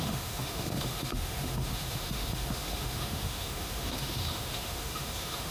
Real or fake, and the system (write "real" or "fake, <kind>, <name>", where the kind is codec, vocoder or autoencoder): fake, autoencoder, DAC-VAE